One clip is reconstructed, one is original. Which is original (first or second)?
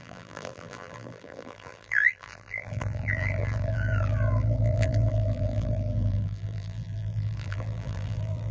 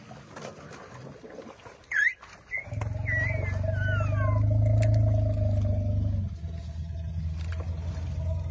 second